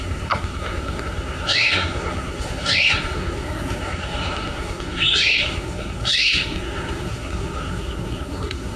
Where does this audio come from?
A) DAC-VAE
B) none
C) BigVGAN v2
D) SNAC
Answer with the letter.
D